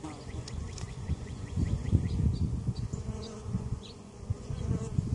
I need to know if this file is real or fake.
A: fake